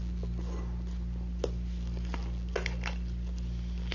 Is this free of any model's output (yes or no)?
yes